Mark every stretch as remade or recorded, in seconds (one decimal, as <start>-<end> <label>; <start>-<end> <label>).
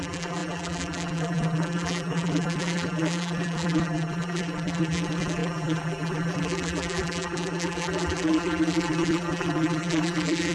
0.0-10.5 remade